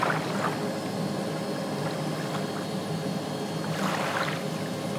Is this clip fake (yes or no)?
no